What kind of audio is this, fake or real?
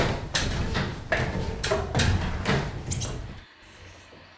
real